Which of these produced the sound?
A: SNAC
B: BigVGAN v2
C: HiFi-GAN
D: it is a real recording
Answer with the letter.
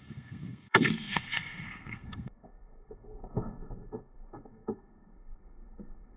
A